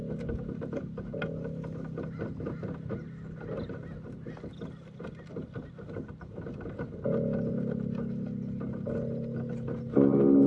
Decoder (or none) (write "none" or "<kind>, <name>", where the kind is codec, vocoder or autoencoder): none